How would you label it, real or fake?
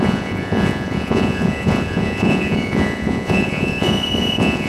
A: fake